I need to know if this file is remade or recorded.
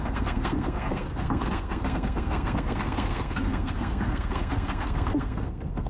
remade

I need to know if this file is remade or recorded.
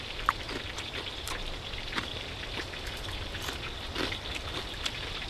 recorded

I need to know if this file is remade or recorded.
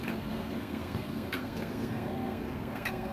remade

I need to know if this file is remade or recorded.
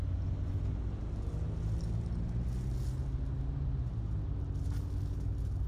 recorded